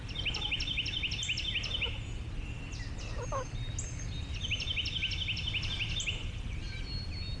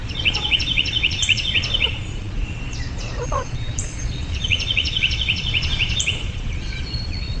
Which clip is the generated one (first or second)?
second